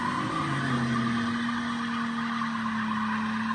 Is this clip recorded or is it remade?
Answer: recorded